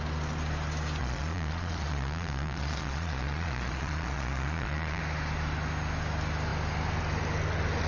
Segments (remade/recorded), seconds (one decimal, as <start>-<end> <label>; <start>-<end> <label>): 0.0-1.0 recorded; 1.0-5.0 remade; 5.0-7.9 recorded